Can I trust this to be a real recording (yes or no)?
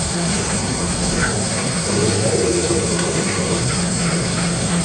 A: no